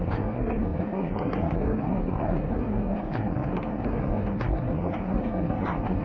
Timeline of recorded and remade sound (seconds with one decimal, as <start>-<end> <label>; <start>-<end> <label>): 0.0-6.0 remade